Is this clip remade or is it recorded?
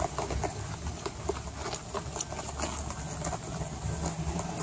recorded